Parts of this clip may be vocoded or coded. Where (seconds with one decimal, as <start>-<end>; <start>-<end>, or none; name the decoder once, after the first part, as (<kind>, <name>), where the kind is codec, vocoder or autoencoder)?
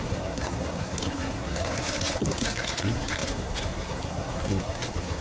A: 0.0-5.2 (codec, SNAC)